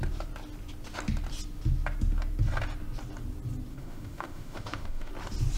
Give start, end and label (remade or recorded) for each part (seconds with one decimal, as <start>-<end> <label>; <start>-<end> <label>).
0.0-3.7 recorded; 3.7-5.1 remade; 5.1-5.6 recorded

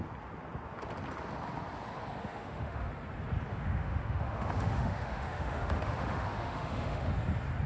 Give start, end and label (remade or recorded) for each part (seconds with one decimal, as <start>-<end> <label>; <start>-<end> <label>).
0.0-2.2 recorded; 2.2-2.9 remade; 2.9-3.5 recorded; 3.5-7.1 remade; 7.1-7.7 recorded

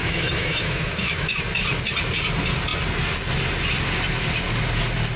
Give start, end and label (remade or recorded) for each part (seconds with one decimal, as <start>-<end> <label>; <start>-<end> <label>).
0.0-1.4 remade; 1.4-5.2 recorded

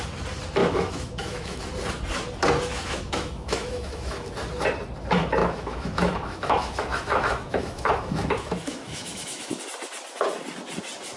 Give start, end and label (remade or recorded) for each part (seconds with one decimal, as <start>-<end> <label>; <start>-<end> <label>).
0.0-0.6 recorded; 0.6-1.6 remade; 1.6-2.7 recorded; 2.7-4.3 remade; 4.3-5.4 recorded; 5.4-9.6 remade; 9.6-11.2 recorded

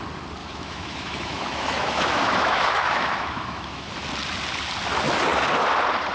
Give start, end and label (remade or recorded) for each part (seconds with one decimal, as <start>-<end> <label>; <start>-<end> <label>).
0.0-0.4 recorded; 0.4-3.9 remade; 3.9-6.1 recorded

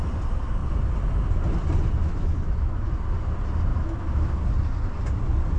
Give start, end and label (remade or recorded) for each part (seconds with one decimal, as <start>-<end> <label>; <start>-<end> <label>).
0.0-2.0 recorded; 2.0-2.9 remade; 2.9-3.7 recorded; 3.7-4.4 remade; 4.4-5.6 recorded

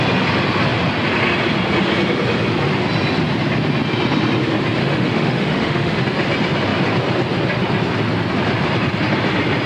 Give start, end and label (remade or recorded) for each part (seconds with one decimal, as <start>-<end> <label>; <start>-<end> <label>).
0.0-4.8 recorded; 4.8-6.0 remade; 6.0-9.7 recorded